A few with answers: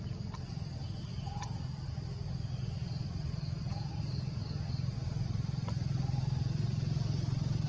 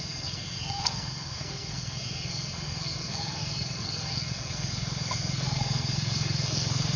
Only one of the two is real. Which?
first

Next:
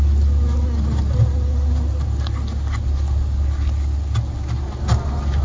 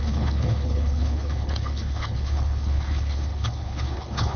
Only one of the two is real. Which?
first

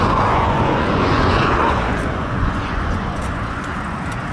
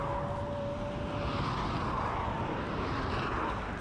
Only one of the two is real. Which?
second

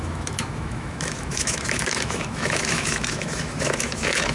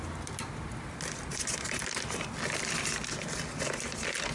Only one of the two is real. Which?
second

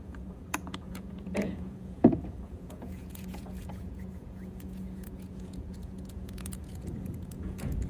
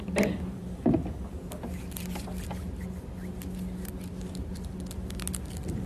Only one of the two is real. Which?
second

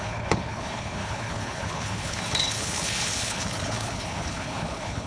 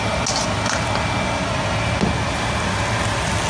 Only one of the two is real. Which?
second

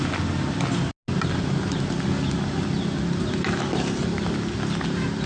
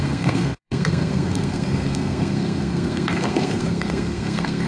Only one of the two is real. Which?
first